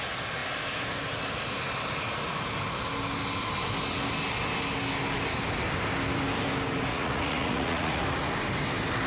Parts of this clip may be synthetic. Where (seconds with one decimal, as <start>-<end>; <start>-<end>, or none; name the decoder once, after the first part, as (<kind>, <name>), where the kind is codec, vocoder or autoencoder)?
6.9-8.0 (vocoder, Vocos)